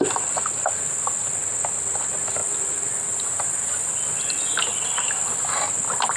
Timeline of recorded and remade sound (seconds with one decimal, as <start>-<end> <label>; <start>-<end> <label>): 0.0-6.2 recorded